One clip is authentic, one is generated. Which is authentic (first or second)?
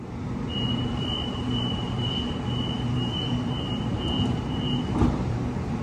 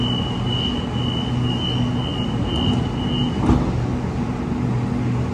second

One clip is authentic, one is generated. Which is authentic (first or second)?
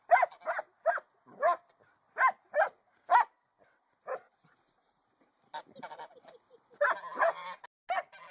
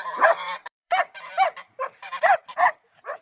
first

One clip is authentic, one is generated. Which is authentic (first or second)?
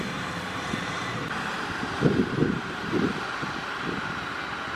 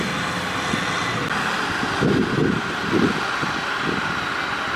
second